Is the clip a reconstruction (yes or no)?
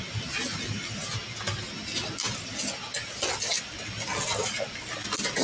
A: no